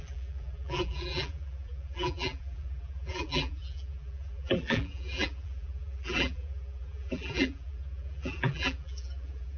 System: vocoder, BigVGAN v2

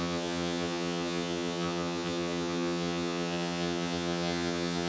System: vocoder, HiFi-GAN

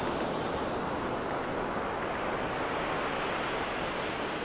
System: none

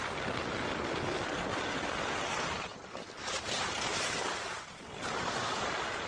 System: none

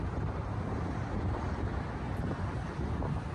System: none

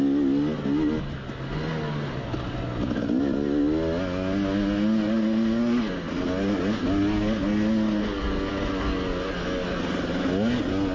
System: none